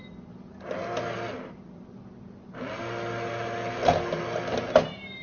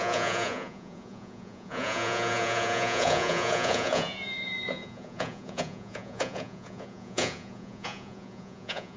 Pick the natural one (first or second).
first